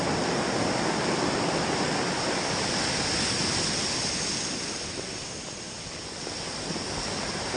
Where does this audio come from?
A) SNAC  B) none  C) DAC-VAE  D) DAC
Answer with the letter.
B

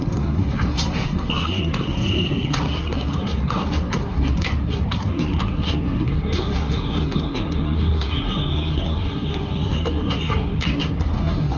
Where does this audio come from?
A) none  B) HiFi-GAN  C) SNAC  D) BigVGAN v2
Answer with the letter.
C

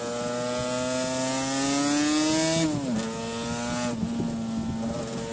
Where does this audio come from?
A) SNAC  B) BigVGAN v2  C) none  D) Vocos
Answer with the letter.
C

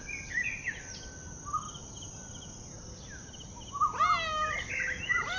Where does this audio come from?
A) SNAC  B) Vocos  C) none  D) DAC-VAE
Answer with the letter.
C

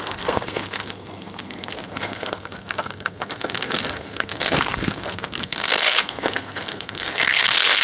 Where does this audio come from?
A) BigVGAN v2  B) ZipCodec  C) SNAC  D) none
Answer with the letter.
C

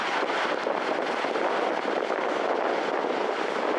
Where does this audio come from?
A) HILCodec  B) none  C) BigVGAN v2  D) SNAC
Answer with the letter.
B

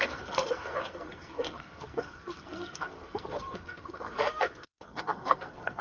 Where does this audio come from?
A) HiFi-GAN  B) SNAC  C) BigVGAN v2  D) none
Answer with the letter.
B